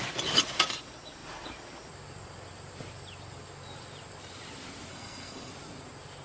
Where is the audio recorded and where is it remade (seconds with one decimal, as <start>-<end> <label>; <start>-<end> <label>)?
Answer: 0.0-4.9 recorded; 4.9-5.5 remade; 5.5-6.2 recorded